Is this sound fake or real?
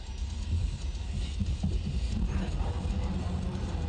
real